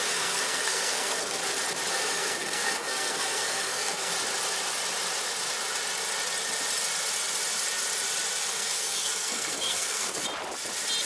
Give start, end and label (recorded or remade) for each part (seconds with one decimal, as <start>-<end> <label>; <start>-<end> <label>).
0.0-1.4 remade; 1.4-1.9 recorded; 1.9-4.1 remade; 4.1-8.5 recorded; 8.5-10.2 remade; 10.2-11.1 recorded